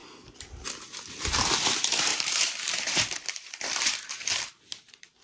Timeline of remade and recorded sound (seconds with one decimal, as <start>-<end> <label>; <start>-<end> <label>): 0.0-1.0 recorded; 1.0-5.2 remade